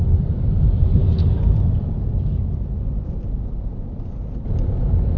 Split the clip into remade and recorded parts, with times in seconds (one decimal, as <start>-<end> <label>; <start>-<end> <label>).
0.0-1.1 remade; 1.1-2.0 recorded; 2.0-5.2 remade